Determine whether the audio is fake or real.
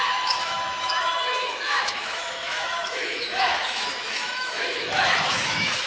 fake